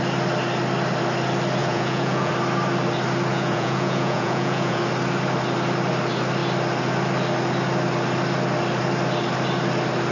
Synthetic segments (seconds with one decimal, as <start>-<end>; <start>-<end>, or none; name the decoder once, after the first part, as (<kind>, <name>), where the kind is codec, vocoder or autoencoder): 1.6-2.3 (vocoder, Vocos); 3.3-4.8